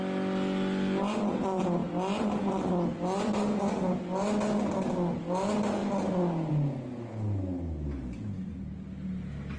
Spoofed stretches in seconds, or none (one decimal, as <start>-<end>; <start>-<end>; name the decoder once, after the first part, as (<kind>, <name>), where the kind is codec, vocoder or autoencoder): none